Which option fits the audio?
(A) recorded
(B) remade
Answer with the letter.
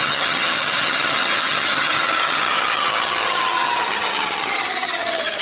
B